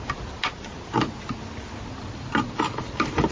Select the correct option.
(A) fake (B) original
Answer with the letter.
B